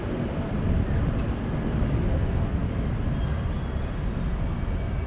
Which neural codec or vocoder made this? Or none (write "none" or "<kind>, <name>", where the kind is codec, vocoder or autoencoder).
none